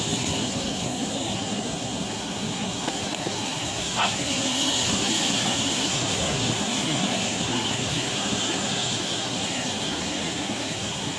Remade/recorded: remade